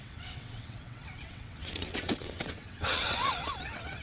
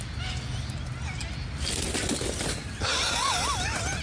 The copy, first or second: first